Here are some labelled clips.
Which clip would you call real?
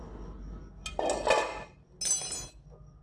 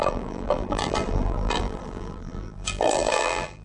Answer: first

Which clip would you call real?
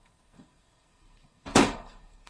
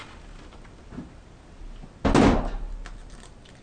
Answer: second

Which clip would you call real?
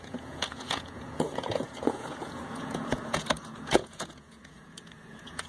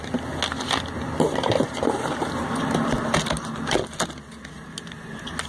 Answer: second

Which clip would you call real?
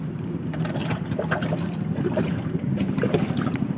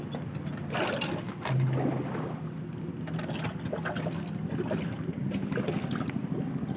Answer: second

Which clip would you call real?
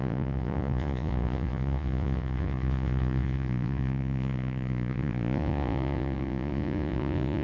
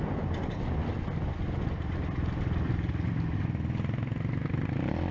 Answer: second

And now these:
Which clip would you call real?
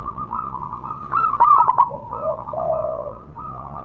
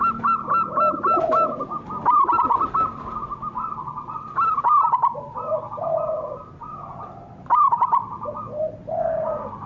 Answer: second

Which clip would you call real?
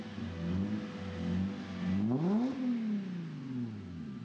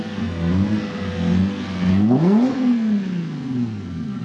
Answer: first